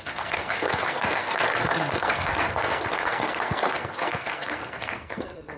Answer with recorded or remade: remade